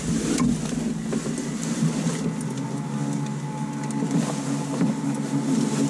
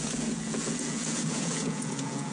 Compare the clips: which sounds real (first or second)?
first